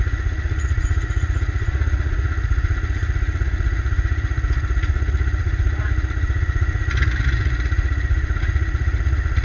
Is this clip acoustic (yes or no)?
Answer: no